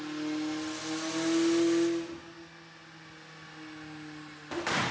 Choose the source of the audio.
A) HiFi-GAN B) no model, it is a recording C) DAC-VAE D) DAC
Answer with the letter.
B